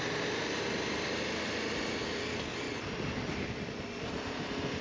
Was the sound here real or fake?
real